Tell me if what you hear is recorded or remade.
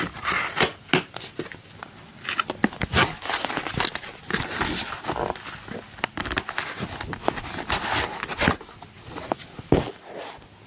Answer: recorded